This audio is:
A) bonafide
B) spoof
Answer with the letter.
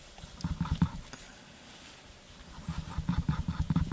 A